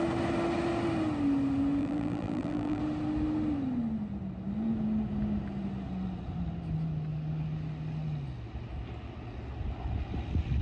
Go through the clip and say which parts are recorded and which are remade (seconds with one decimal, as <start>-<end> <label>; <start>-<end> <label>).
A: 0.0-1.8 recorded; 1.8-2.8 remade; 2.8-10.6 recorded